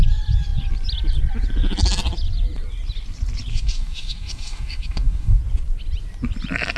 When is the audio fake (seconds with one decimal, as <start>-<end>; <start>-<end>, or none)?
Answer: 3.5-5.4